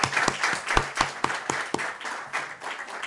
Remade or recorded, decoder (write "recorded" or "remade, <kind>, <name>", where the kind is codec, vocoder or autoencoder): recorded